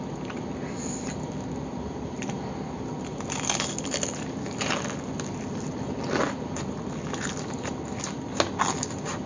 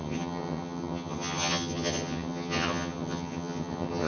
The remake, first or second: second